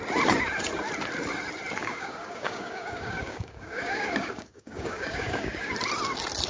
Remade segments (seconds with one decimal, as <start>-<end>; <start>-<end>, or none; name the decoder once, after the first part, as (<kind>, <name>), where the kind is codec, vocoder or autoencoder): 1.8-5.7 (codec, DAC)